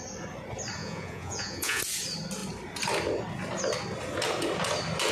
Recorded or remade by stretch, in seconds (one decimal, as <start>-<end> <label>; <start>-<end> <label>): 0.0-0.8 recorded; 0.8-1.8 remade; 1.8-5.1 recorded